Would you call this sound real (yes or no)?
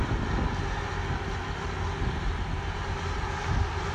yes